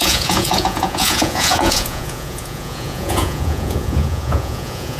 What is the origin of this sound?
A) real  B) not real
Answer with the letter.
B